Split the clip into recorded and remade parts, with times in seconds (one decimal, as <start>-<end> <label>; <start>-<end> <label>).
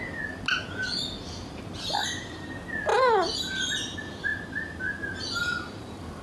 0.0-6.2 recorded